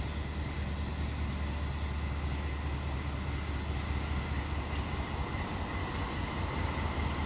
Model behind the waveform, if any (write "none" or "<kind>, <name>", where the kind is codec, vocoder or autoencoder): none